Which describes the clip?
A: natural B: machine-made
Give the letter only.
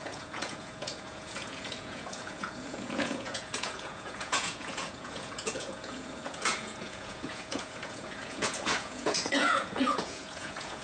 B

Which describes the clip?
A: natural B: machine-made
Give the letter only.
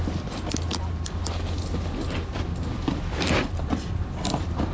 A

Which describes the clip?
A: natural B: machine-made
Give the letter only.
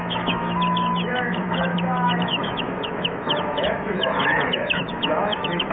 B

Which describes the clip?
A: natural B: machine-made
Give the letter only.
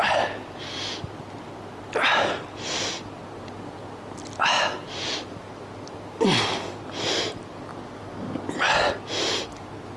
A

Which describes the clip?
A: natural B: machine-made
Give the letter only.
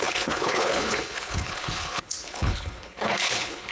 B